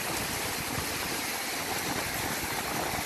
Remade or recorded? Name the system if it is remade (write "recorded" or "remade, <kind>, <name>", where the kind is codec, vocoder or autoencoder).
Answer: recorded